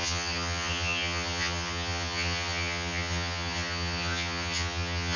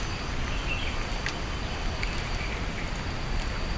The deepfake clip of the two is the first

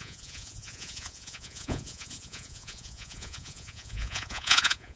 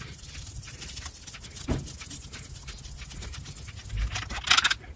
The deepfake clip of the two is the first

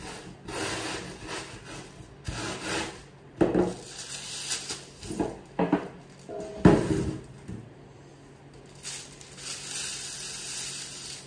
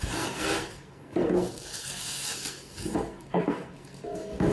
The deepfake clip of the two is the second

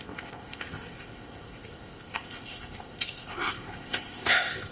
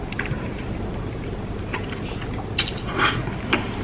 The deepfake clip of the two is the first